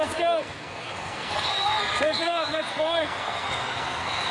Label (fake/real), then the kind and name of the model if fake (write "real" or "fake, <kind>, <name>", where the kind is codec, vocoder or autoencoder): fake, codec, SNAC